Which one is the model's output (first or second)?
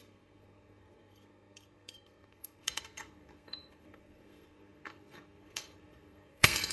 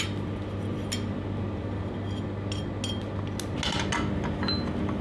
first